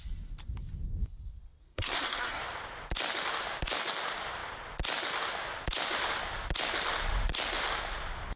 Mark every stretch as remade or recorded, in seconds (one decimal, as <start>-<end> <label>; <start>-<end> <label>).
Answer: 0.0-1.6 recorded; 1.6-2.4 remade; 2.4-8.4 recorded